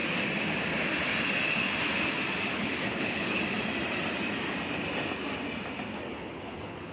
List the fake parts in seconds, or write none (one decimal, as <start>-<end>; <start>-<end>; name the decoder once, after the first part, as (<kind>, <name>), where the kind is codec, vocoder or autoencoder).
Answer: 2.5-3.4 (codec, HILCodec); 6.1-6.9